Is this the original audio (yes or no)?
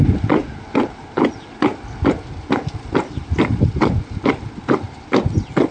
yes